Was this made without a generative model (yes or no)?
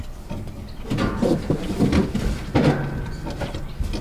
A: yes